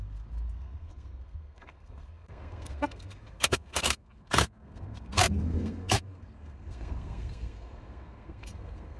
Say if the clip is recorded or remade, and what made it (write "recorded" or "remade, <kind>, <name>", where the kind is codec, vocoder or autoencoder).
remade, codec, SNAC